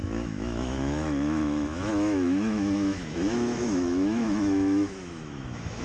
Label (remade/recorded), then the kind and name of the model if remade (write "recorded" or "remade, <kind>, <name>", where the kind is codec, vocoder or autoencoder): remade, autoencoder, DAC-VAE